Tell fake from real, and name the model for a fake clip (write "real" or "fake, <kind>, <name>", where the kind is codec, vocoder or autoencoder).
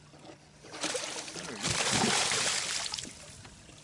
fake, vocoder, BigVGAN v2